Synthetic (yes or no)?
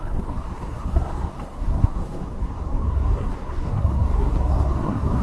yes